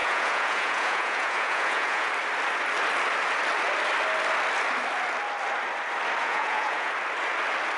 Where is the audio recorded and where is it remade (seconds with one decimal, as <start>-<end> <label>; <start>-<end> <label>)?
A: 0.0-2.1 remade; 2.1-6.2 recorded; 6.2-6.9 remade; 6.9-7.8 recorded